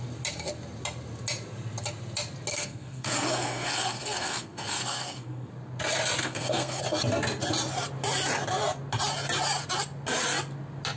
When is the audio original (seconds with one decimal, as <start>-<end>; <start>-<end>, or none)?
0.0-2.5; 5.5-6.2; 6.8-11.0